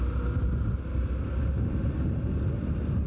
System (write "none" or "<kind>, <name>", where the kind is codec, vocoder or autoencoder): none